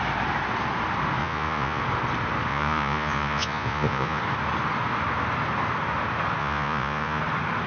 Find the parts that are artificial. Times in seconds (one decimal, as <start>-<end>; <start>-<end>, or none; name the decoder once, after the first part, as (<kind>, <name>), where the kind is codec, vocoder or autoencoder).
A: 1.2-1.8 (vocoder, Vocos); 2.5-4.2; 6.4-7.2